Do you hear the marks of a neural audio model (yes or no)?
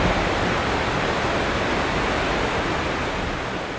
no